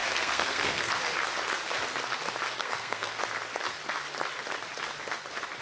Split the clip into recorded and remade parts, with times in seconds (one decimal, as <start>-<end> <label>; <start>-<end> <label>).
0.0-0.9 remade; 0.9-2.6 recorded; 2.6-3.2 remade; 3.2-5.6 recorded